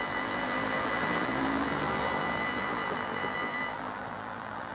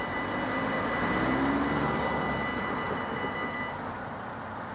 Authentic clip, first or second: second